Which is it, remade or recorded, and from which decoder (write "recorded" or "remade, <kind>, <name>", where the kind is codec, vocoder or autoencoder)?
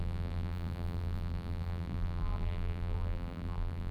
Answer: remade, vocoder, BigVGAN v2